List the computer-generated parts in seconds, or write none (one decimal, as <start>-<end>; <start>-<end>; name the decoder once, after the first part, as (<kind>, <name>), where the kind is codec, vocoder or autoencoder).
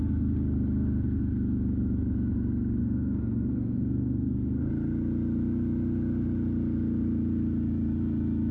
2.8-4.7 (codec, SNAC)